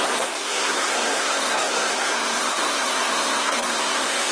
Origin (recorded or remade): remade